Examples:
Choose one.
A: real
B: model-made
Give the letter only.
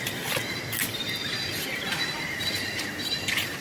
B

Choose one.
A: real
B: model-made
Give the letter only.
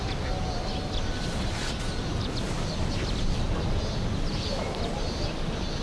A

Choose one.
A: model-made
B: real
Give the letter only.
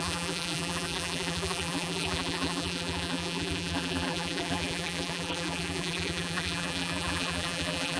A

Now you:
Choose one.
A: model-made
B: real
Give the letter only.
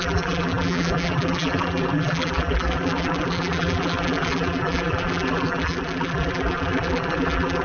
A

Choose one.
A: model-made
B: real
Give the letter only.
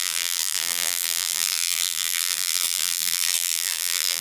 A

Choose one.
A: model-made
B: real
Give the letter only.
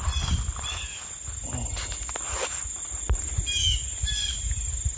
B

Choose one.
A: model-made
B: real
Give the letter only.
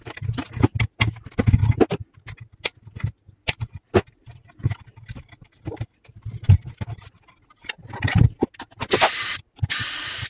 B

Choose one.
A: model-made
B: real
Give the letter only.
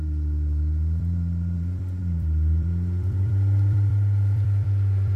A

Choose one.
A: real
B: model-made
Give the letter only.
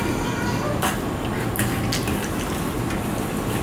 A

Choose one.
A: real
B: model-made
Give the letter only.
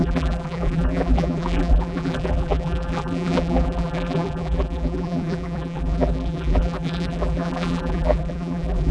B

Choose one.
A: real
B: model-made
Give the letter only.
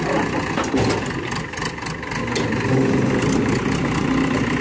A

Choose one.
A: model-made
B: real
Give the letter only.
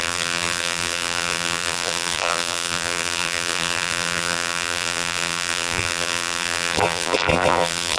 A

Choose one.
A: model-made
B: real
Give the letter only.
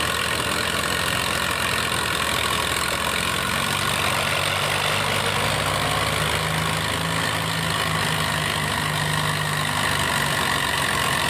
B